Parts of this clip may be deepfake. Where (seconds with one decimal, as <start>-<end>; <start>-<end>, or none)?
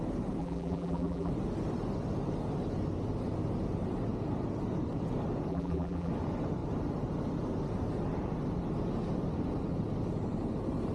0.4-1.3; 5.5-6.1